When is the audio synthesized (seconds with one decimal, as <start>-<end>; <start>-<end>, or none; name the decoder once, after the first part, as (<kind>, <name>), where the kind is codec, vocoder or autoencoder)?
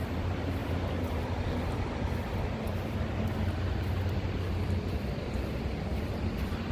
0.0-0.6 (vocoder, BigVGAN v2); 4.0-6.7